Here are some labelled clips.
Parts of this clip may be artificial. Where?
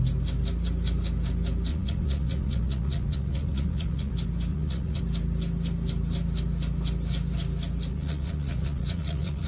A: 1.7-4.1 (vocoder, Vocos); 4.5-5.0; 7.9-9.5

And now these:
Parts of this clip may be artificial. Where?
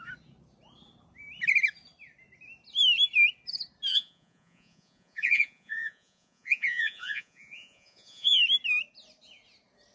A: 3.9-8.4 (vocoder, Vocos)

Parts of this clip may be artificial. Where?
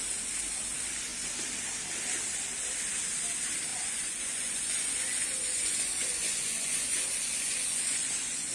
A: 3.7-8.5 (vocoder, Vocos)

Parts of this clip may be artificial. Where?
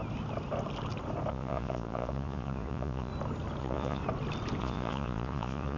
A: 1.3-3.1 (vocoder, Vocos); 3.6-4.0; 4.6-5.8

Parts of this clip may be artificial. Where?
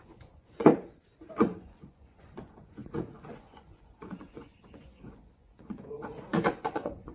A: 0.0-0.7 (vocoder, Vocos); 1.3-7.1